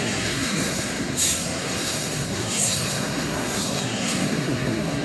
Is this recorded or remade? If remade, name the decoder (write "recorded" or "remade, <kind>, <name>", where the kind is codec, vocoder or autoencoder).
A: remade, codec, SNAC